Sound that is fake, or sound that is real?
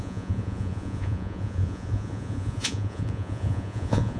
fake